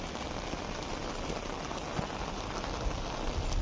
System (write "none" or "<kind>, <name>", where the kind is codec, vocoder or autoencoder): none